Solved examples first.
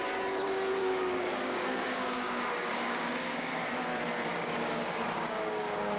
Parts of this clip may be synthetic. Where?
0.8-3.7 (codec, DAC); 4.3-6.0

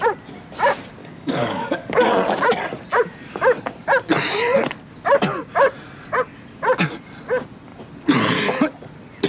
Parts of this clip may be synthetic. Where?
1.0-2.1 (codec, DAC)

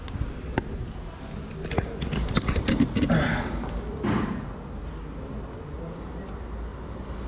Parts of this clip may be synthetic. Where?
none

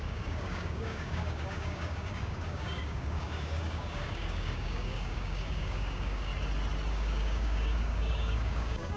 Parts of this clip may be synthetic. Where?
0.0-6.3 (codec, DAC); 6.9-9.0

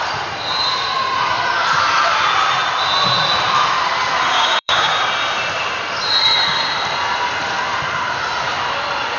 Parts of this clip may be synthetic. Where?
4.3-4.9 (codec, DAC)